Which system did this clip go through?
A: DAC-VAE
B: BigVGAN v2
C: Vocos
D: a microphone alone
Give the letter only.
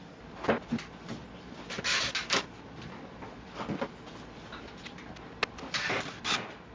D